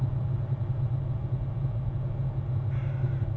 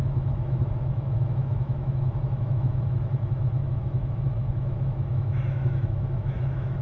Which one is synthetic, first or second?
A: second